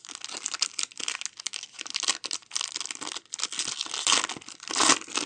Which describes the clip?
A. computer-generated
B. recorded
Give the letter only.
B